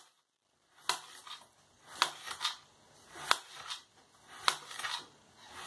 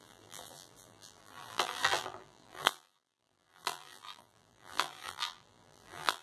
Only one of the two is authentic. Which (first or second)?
first